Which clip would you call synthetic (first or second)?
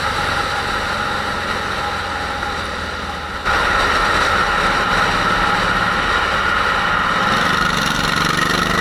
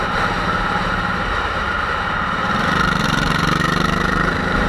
second